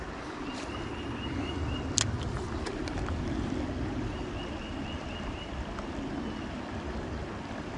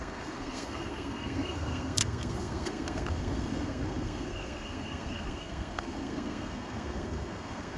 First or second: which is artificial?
second